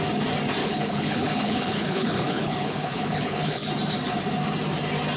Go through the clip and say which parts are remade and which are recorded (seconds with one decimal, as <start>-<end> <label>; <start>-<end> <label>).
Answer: 0.0-0.6 recorded; 0.6-3.7 remade; 3.7-5.2 recorded